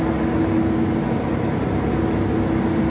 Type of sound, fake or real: real